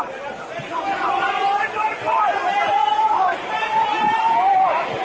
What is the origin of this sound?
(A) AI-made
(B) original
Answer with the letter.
B